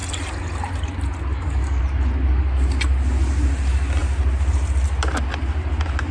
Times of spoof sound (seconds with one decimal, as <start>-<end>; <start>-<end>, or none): 1.3-1.8